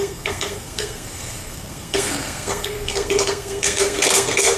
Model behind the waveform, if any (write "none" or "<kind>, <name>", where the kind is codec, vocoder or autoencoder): codec, SNAC